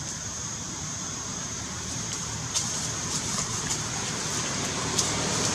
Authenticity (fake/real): fake